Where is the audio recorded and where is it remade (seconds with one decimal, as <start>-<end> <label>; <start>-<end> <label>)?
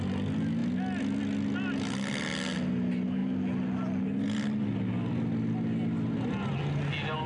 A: 0.0-7.3 recorded